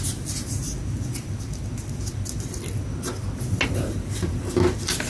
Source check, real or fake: real